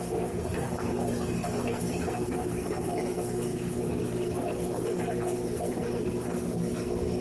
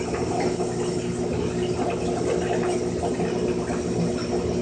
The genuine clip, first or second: second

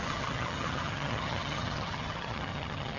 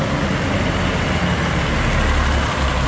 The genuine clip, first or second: second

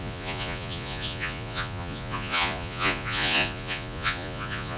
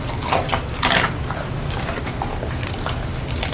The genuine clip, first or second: second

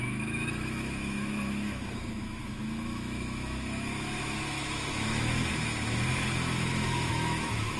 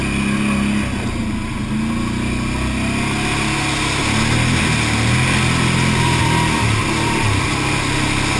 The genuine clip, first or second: second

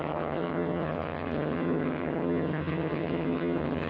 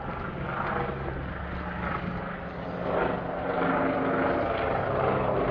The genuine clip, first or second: second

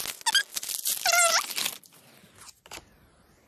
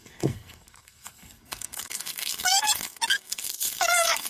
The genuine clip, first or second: first